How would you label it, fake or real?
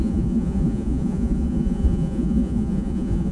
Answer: fake